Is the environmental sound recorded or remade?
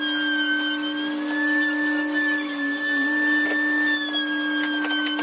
recorded